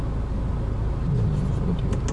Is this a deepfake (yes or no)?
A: no